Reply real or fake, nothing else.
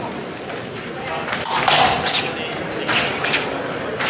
real